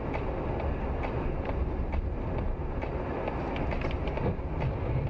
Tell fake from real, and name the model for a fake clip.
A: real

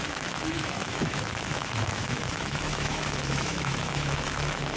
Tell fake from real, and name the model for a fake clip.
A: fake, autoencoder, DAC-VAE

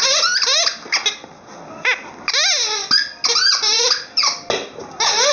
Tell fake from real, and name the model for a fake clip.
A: real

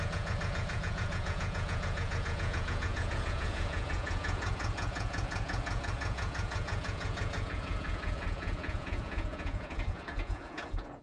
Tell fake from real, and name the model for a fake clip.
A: fake, vocoder, Vocos